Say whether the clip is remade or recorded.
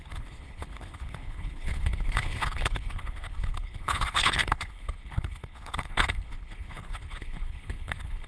remade